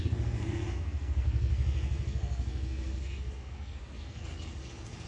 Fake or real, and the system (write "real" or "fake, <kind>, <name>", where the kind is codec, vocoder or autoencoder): fake, codec, SNAC